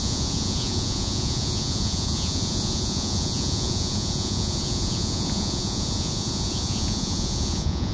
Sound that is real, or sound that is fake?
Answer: fake